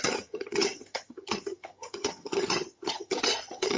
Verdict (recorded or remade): remade